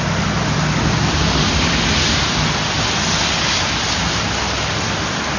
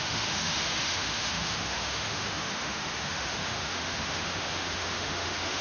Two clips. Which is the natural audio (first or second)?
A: first